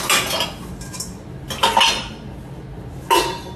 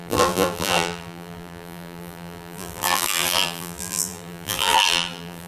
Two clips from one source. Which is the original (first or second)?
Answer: first